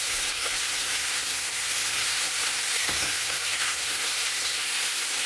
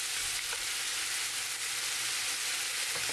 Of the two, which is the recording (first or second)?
second